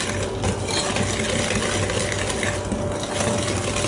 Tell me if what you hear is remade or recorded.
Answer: recorded